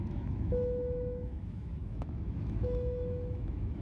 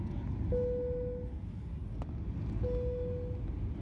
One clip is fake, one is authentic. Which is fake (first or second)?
first